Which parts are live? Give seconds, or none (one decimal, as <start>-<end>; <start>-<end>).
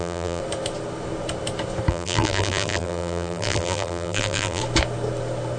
0.4-1.9; 4.6-5.6